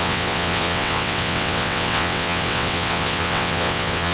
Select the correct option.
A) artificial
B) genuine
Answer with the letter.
A